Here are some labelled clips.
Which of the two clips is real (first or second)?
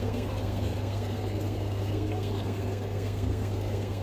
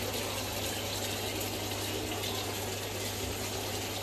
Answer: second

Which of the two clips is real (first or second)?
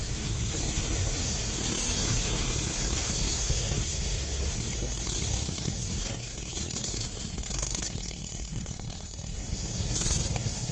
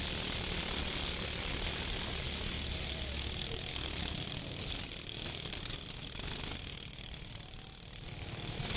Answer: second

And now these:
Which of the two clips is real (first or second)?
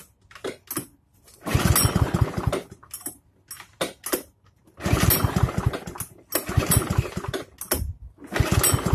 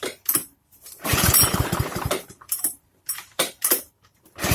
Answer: first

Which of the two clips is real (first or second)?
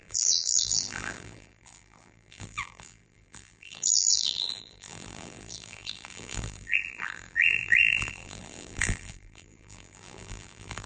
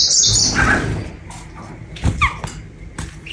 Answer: second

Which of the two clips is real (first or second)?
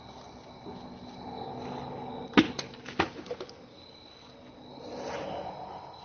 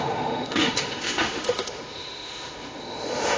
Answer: first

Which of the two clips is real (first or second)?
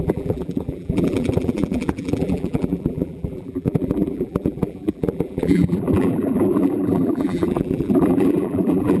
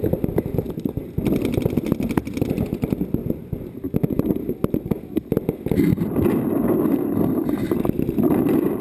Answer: second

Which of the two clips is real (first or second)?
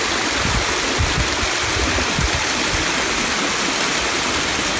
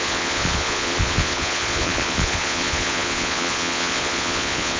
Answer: first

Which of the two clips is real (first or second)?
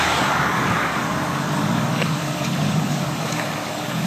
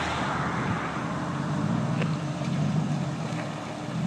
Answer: second